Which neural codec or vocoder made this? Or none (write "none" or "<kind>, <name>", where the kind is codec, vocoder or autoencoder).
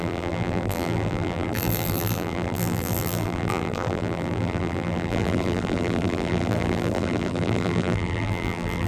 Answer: vocoder, BigVGAN v2